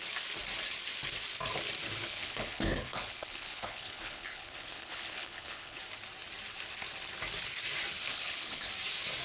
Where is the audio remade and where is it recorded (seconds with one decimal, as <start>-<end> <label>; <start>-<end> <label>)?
0.0-1.8 recorded; 1.8-5.8 remade; 5.8-8.0 recorded; 8.0-8.7 remade; 8.7-9.2 recorded